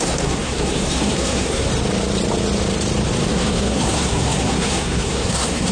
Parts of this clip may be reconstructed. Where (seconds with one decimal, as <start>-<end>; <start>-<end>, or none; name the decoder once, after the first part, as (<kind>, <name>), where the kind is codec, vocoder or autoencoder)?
0.0-1.7 (codec, SNAC); 3.3-5.7